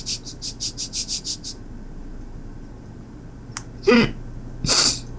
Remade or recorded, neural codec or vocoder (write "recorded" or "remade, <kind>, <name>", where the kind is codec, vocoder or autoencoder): recorded